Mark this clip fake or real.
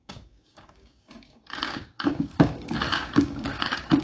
fake